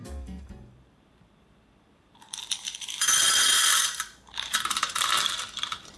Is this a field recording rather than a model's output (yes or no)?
no